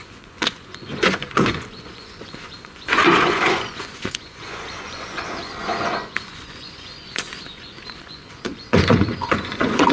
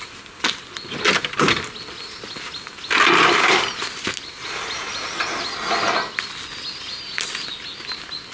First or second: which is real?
second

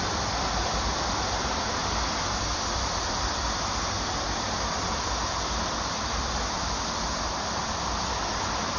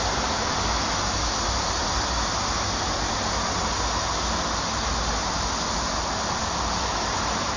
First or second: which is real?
second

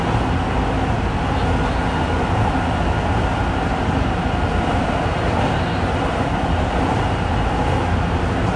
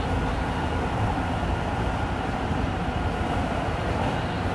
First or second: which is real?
first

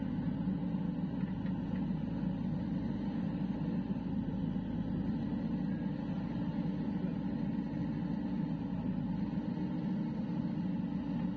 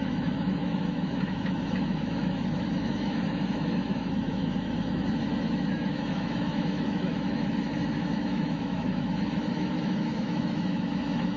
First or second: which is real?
first